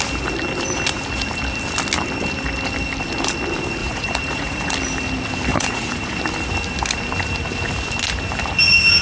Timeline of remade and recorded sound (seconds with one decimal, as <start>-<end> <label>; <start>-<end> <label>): 0.0-3.8 recorded; 3.8-4.7 remade; 4.7-5.5 recorded; 5.5-6.1 remade; 6.1-9.0 recorded